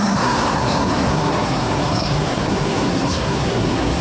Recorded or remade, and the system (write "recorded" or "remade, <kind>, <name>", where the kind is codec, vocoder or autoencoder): remade, codec, SNAC